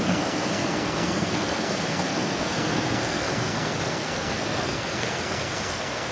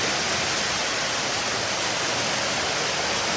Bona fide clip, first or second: second